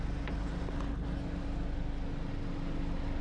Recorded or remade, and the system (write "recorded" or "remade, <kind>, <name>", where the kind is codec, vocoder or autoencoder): recorded